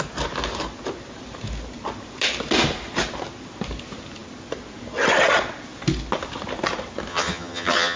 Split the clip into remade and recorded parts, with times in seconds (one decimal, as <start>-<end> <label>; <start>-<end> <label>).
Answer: 0.0-7.1 recorded; 7.1-8.0 remade